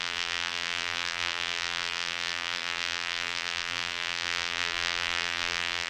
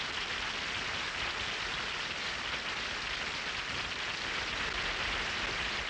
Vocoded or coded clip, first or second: first